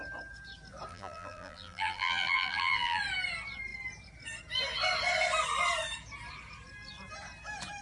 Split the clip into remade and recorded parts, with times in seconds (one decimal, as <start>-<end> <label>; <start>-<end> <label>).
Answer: 0.0-0.9 recorded; 0.9-3.0 remade; 3.0-7.8 recorded